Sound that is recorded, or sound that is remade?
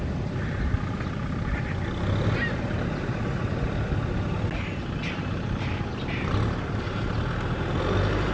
recorded